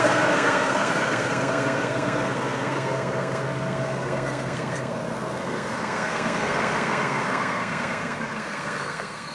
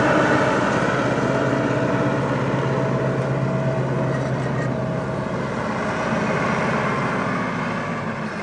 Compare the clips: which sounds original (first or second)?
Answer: second